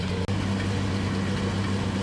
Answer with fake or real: real